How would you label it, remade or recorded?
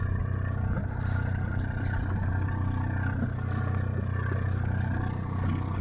recorded